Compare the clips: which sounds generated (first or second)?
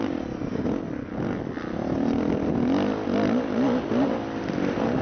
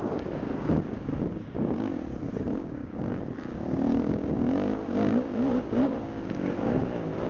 second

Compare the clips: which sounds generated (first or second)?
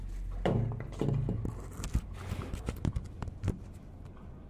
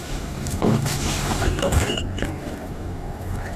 second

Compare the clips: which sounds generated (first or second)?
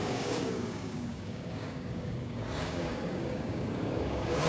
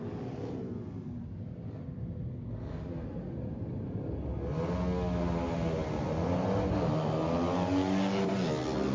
first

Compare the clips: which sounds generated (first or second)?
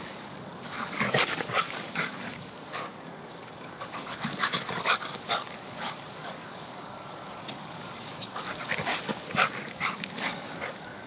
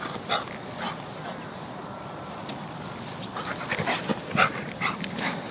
first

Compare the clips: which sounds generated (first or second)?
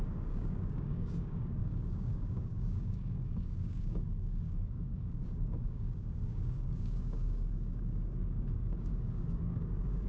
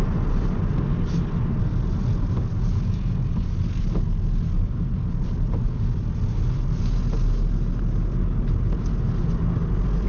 first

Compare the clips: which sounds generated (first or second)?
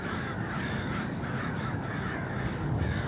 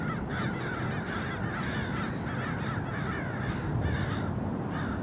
first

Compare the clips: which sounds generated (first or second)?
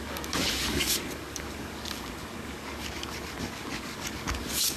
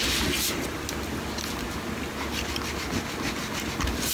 first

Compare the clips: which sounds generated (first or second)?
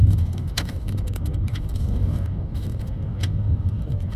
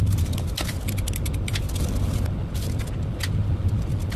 first